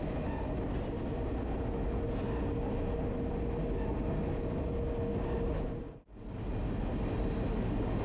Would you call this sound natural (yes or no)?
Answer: yes